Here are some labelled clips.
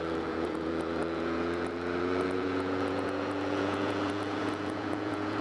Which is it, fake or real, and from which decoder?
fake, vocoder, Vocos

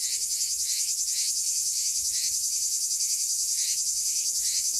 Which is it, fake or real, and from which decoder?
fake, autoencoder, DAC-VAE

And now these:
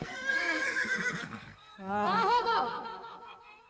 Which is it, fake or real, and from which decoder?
fake, codec, SNAC